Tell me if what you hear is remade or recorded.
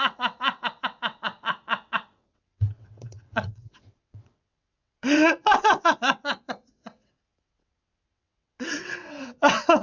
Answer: remade